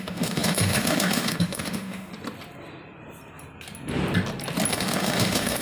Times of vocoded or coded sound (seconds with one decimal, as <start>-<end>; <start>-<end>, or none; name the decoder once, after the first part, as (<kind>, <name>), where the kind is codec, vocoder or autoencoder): 0.0-2.1 (autoencoder, DAC-VAE); 4.7-5.6